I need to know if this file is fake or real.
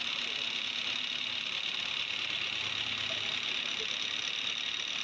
real